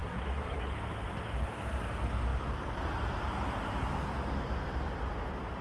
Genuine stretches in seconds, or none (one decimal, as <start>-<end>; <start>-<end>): 0.7-5.6